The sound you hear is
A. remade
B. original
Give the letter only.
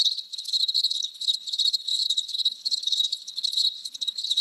A